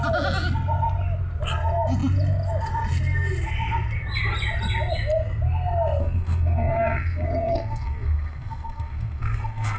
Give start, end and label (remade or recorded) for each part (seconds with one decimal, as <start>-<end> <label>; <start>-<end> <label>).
0.0-6.0 recorded; 6.0-9.8 remade